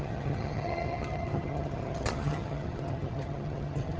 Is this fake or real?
fake